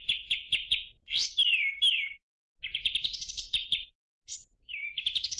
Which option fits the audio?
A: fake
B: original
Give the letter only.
B